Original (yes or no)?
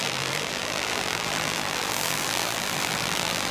no